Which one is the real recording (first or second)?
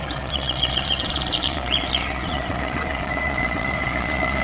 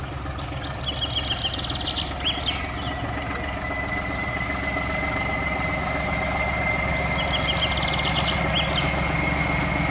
second